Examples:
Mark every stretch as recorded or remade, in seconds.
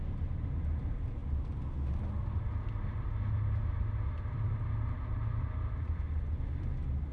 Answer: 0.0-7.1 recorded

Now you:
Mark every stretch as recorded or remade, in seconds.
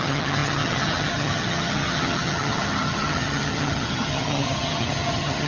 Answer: 0.0-5.5 remade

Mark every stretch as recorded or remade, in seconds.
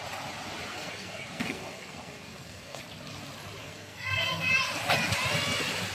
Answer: 0.0-0.7 recorded; 0.7-2.8 remade; 2.8-3.6 recorded; 3.6-4.5 remade; 4.5-5.9 recorded